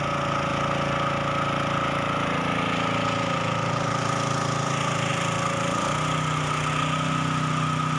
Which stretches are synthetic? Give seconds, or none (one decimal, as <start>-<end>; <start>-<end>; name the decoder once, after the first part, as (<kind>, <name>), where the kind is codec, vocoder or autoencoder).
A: none